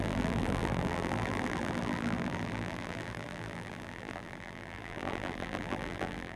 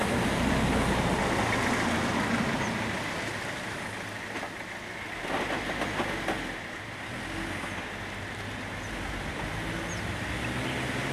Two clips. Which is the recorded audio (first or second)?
second